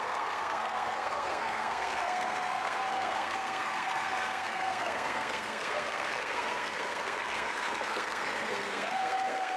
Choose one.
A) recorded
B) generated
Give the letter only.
B